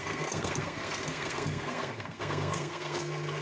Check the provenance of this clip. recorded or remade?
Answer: remade